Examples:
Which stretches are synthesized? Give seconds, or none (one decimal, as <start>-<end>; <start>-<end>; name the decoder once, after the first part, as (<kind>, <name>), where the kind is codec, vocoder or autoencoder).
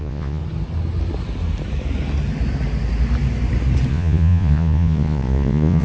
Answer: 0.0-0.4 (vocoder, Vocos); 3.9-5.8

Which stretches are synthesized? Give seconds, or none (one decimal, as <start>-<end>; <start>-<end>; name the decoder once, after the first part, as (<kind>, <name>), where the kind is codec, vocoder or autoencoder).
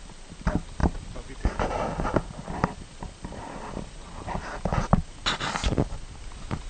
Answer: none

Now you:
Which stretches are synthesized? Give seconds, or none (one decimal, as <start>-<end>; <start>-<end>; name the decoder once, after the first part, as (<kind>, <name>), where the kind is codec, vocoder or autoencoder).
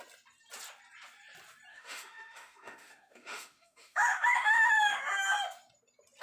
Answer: 1.7-5.0 (autoencoder, DAC-VAE)